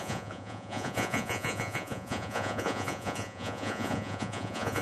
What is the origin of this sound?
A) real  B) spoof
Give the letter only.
B